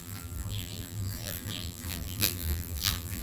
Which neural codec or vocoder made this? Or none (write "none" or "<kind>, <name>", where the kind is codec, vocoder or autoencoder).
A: vocoder, BigVGAN v2